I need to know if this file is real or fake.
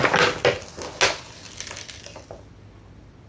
real